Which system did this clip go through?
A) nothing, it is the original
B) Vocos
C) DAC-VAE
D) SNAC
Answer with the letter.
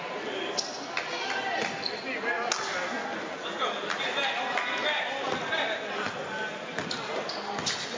A